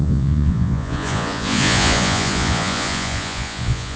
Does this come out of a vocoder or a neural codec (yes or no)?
yes